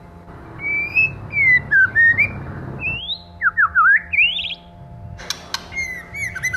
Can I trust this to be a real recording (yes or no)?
yes